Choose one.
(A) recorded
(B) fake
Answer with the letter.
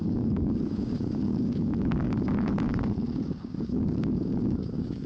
B